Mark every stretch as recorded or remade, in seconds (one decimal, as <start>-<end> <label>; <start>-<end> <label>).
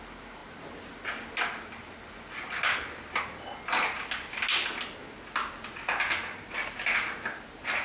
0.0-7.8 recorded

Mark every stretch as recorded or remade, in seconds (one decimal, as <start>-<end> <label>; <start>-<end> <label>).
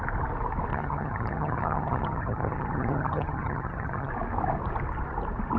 0.0-0.7 recorded; 0.7-4.1 remade; 4.1-5.6 recorded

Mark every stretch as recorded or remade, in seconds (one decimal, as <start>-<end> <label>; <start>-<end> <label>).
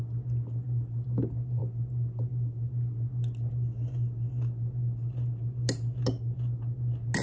0.0-7.2 recorded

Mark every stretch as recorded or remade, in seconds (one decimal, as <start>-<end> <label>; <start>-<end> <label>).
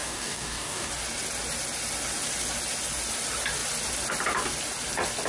0.0-0.9 remade; 0.9-5.3 recorded